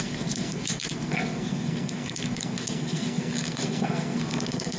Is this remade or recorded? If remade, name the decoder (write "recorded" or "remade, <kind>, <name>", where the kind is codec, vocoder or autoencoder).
remade, codec, SNAC